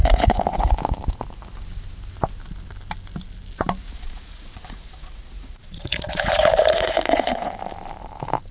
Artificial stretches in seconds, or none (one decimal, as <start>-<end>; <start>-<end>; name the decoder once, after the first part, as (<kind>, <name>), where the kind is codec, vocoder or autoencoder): 0.0-0.7 (vocoder, Vocos); 3.8-7.5

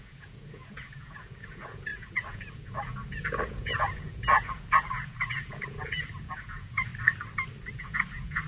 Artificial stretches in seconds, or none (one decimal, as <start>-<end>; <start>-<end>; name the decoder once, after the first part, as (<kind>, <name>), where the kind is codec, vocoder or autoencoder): 0.0-6.9 (vocoder, Vocos); 7.7-8.5